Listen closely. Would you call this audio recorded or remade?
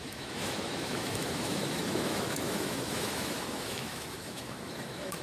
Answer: remade